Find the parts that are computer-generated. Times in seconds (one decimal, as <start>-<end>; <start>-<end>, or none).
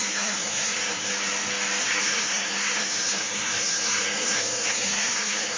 0.0-1.1; 1.8-5.6